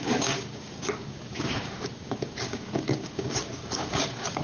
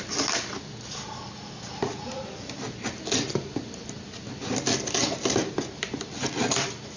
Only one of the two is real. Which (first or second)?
second